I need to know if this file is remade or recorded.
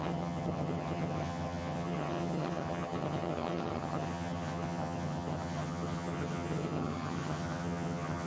remade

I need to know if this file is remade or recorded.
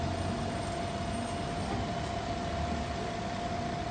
recorded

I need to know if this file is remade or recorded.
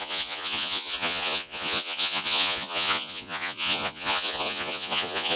remade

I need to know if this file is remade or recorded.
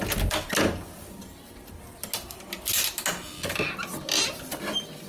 recorded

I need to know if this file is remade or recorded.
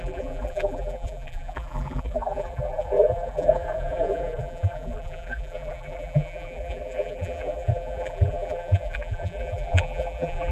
remade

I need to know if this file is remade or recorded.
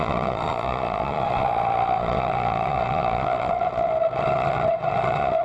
remade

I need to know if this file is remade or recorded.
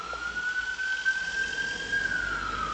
recorded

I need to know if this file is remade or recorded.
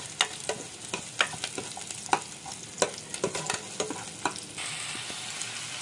recorded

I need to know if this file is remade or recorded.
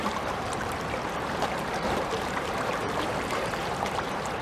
remade